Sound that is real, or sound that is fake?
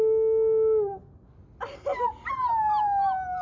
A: real